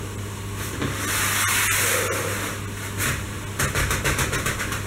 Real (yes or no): yes